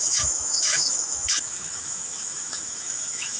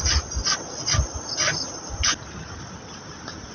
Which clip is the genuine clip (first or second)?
second